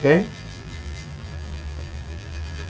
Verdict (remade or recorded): remade